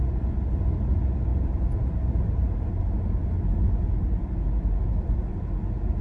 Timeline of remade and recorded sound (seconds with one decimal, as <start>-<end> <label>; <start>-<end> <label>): 0.0-1.3 recorded; 1.3-2.7 remade; 2.7-6.0 recorded